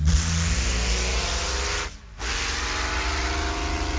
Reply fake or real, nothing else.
real